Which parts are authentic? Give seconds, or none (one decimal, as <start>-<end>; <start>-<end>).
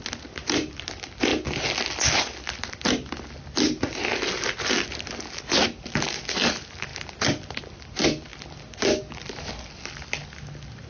0.0-10.9